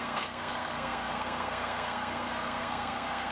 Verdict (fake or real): fake